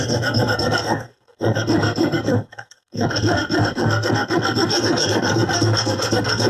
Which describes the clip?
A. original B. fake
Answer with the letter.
B